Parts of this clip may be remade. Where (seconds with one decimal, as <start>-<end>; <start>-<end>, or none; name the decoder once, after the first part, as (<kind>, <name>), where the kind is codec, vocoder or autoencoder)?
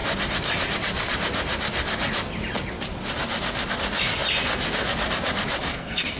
5.7-6.2 (codec, SNAC)